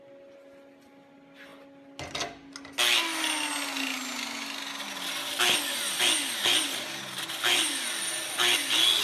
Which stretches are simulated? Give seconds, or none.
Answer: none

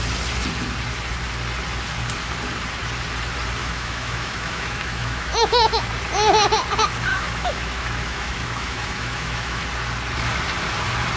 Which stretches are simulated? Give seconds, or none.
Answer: 3.6-5.9 (autoencoder, DAC-VAE); 7.1-9.6

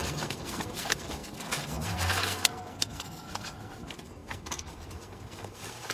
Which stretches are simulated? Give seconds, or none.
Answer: 0.0-5.9 (codec, SNAC)

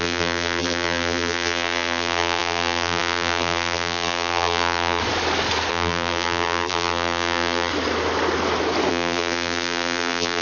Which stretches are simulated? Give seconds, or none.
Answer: 0.0-5.0 (vocoder, BigVGAN v2); 5.7-7.7; 8.9-10.4

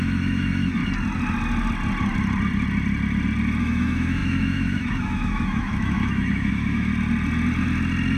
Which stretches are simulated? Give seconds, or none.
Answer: 0.0-0.8 (autoencoder, DAC-VAE); 3.6-6.9

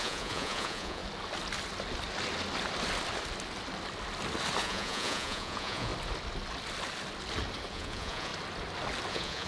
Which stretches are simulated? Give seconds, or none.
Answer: 0.0-1.0 (vocoder, Vocos); 4.6-5.9; 7.7-8.3; 9.1-9.5

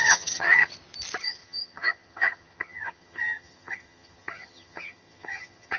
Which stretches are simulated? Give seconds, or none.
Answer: 0.0-0.7 (vocoder, HiFi-GAN); 1.2-5.8